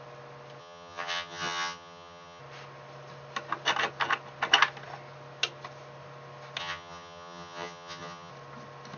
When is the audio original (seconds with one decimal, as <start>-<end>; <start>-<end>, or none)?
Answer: 0.0-0.6; 2.4-6.6; 8.3-9.0